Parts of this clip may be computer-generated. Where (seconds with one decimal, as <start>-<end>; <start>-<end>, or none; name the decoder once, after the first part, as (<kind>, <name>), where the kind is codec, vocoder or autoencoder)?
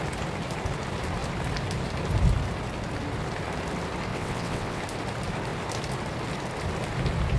4.1-4.8 (vocoder, WaveNeXt)